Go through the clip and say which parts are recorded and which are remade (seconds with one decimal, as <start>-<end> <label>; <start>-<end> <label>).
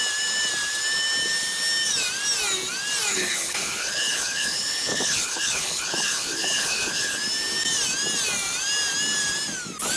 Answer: 0.0-3.1 recorded; 3.1-7.2 remade; 7.2-10.0 recorded